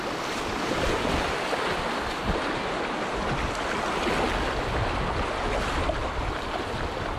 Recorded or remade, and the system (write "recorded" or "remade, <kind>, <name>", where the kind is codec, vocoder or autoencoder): recorded